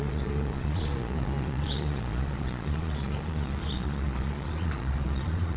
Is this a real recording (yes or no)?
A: no